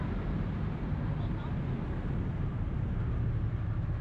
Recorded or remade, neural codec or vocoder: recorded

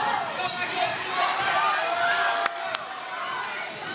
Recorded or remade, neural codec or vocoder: recorded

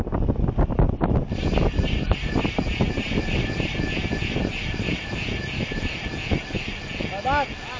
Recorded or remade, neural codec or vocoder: recorded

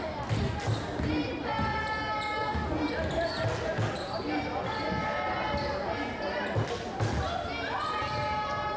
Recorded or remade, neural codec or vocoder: recorded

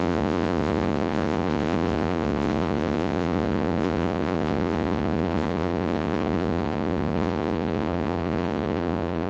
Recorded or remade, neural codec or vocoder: remade, vocoder, Vocos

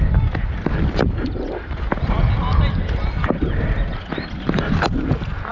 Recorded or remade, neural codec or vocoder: recorded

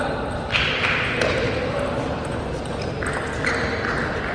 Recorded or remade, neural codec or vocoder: recorded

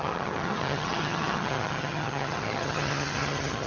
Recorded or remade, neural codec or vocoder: remade, vocoder, HiFi-GAN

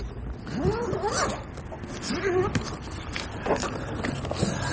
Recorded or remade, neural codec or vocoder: recorded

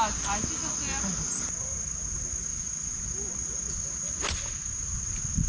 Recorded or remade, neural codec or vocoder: recorded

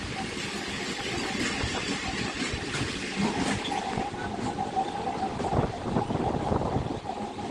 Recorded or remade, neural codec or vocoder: recorded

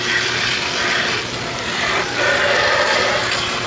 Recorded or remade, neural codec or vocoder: recorded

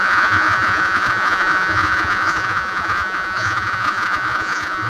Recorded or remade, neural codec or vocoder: remade, vocoder, Vocos